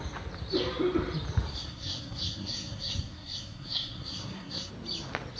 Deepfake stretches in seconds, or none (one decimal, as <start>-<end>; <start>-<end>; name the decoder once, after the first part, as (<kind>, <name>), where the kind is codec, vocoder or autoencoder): 1.5-4.7 (codec, SNAC)

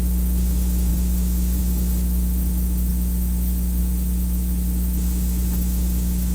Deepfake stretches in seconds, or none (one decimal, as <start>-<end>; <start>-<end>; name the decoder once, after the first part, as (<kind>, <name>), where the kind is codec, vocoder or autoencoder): 0.0-6.3 (autoencoder, DAC-VAE)

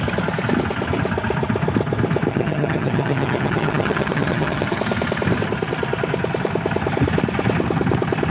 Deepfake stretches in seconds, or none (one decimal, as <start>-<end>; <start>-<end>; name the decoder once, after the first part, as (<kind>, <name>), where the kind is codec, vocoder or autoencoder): 2.3-4.8 (vocoder, HiFi-GAN)

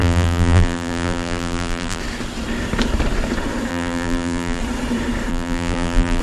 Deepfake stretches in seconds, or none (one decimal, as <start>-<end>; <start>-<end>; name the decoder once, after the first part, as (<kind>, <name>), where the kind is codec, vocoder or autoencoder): 0.0-2.0 (vocoder, BigVGAN v2); 3.7-4.6; 5.3-6.2

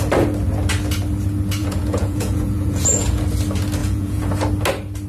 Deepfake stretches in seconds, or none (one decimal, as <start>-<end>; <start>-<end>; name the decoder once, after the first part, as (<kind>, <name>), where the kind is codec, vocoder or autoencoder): 1.6-3.2 (vocoder, Vocos); 3.8-4.3

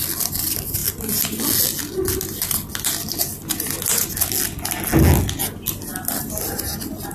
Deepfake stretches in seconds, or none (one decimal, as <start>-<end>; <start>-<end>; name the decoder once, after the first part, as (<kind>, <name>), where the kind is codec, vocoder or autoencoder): none

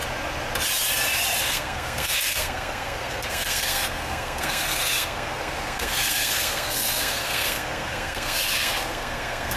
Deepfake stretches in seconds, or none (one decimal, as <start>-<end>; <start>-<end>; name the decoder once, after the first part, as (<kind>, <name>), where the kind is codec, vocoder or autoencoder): 1.4-9.6 (codec, SNAC)